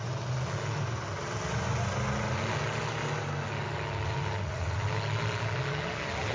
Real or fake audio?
real